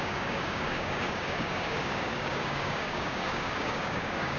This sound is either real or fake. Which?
fake